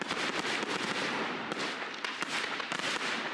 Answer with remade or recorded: recorded